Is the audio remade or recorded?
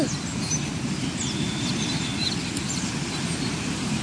recorded